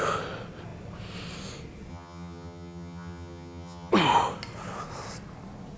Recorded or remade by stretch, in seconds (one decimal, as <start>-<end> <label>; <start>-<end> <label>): 0.0-1.9 recorded; 1.9-3.9 remade; 3.9-5.8 recorded